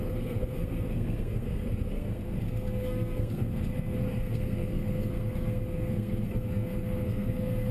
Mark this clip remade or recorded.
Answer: remade